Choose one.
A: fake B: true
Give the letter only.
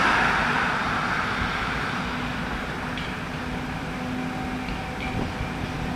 B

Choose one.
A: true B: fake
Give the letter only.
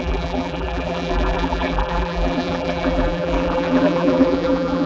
B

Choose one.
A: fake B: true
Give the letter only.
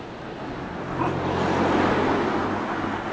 B